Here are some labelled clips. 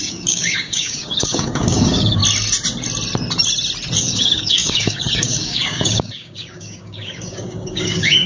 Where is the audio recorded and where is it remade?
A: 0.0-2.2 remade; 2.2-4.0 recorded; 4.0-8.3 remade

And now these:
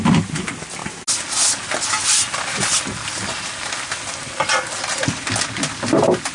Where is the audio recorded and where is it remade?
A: 0.0-6.3 recorded

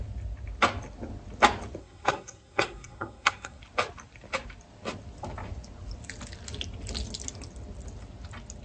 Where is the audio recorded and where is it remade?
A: 0.0-1.8 recorded; 1.8-3.6 remade; 3.6-8.6 recorded

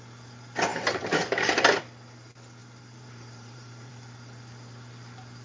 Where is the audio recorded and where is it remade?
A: 0.0-0.7 recorded; 0.7-1.8 remade; 1.8-2.6 recorded; 2.6-3.9 remade; 3.9-5.4 recorded

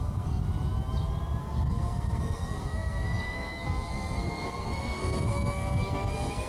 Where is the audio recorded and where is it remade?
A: 0.0-0.4 remade; 0.4-1.4 recorded; 1.4-6.5 remade

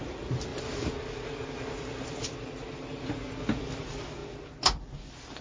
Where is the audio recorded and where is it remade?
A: 0.0-5.4 recorded

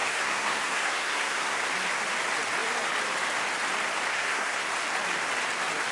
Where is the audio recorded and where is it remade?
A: 0.0-1.6 remade; 1.6-4.1 recorded; 4.1-4.6 remade; 4.6-5.9 recorded